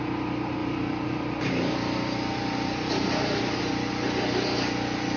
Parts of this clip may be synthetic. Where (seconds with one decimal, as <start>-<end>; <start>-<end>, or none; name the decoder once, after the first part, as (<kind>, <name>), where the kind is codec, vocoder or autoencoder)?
0.6-3.7 (vocoder, BigVGAN v2)